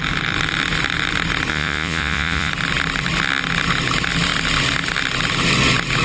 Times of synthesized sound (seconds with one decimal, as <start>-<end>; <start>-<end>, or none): 1.5-2.5